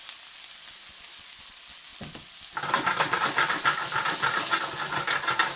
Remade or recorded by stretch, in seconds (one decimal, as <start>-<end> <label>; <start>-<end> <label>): 0.0-5.6 recorded